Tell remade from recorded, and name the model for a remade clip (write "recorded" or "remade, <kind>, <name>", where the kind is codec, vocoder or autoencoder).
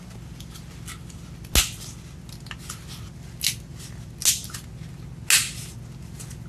recorded